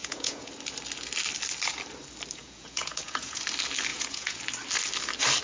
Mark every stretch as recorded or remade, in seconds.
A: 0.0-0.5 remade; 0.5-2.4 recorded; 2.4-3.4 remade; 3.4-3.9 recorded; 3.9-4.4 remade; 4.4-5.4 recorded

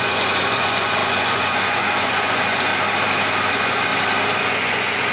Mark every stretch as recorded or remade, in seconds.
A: 0.0-2.7 remade; 2.7-3.5 recorded; 3.5-3.9 remade; 3.9-4.4 recorded; 4.4-5.1 remade

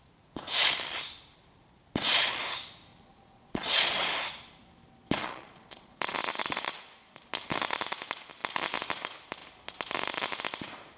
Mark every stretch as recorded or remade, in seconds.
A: 0.0-2.9 recorded; 2.9-4.1 remade; 4.1-5.2 recorded; 5.2-7.3 remade; 7.3-11.0 recorded

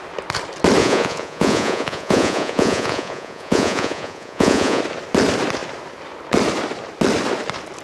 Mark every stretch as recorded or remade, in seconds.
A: 0.0-0.8 recorded; 0.8-4.8 remade; 4.8-7.8 recorded

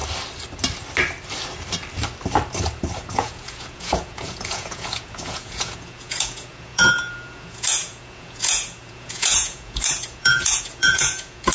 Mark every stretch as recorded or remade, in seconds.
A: 0.0-3.1 recorded; 3.1-11.5 remade

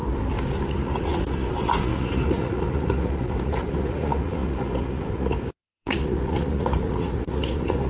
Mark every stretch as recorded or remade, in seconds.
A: 0.0-0.7 recorded; 0.7-7.9 remade

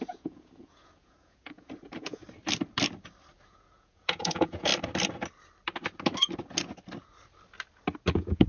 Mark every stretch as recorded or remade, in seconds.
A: 0.0-2.2 remade; 2.2-3.5 recorded; 3.5-4.7 remade; 4.7-8.1 recorded; 8.1-8.5 remade